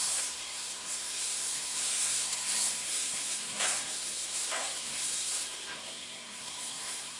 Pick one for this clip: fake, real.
fake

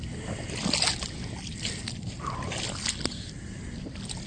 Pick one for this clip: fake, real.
real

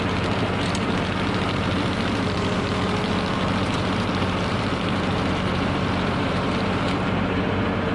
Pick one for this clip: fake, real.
fake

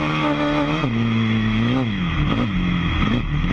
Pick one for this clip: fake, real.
fake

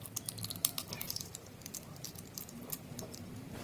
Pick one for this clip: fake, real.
fake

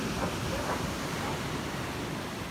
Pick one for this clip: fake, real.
real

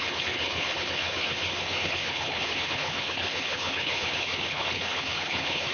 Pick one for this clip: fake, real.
fake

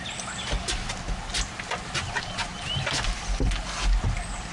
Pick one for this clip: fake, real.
real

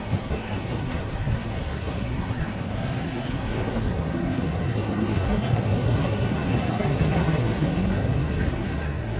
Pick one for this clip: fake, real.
fake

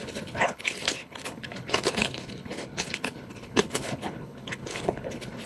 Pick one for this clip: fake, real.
fake